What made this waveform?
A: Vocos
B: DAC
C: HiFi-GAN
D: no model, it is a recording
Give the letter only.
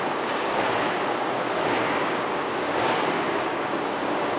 B